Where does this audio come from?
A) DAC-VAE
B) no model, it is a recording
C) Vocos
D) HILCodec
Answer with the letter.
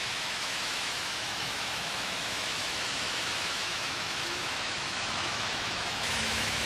A